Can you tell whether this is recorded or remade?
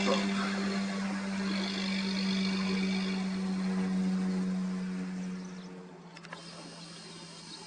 recorded